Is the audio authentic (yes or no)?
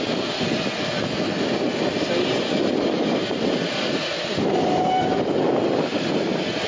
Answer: yes